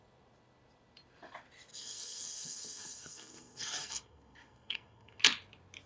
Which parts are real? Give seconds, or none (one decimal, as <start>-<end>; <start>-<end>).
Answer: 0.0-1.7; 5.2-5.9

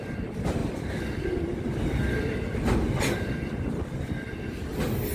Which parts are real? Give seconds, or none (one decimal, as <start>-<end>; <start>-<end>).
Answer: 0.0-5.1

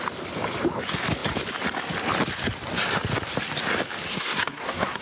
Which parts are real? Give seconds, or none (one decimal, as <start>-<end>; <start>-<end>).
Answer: 0.0-4.1

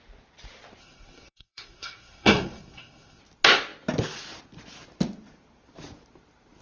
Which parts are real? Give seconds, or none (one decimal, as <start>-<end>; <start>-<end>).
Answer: 0.0-0.8; 3.2-6.6

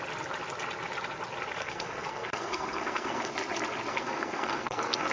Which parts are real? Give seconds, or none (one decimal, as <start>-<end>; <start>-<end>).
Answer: 0.0-1.6; 3.3-3.9

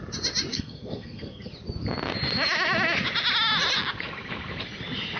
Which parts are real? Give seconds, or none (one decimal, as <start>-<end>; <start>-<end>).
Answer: 0.0-0.5; 1.5-5.2